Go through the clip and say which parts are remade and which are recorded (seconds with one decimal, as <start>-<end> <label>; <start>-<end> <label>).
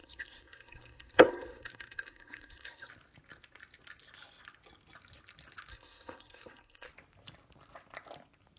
0.0-2.9 remade; 2.9-5.7 recorded; 5.7-6.9 remade; 6.9-8.6 recorded